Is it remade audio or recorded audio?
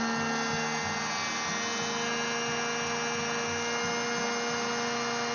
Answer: recorded